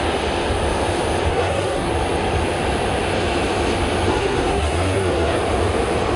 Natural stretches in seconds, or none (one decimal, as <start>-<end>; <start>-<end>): 0.0-1.3; 1.9-4.1; 5.4-6.2